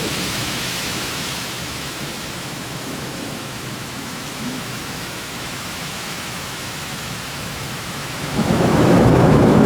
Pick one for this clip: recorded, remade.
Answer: remade